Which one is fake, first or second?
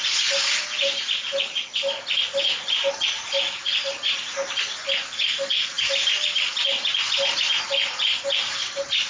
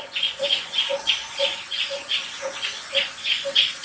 second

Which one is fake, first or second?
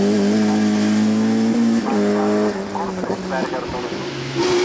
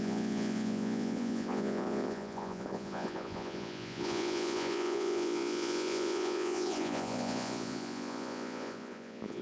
second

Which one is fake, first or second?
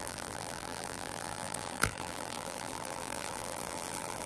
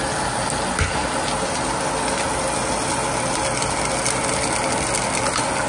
first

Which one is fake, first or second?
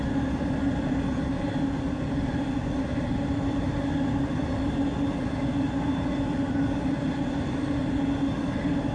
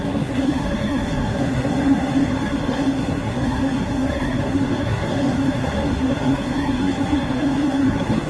second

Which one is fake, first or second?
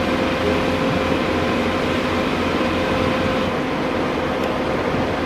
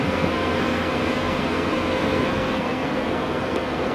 second